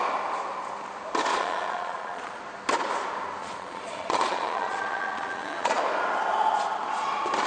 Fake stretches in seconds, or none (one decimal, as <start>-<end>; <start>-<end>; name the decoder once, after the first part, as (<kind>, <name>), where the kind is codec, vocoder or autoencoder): 1.3-2.4 (vocoder, Vocos); 3.4-5.8